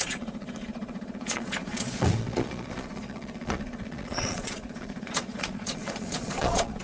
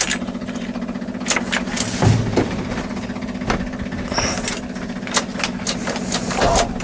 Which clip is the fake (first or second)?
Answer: first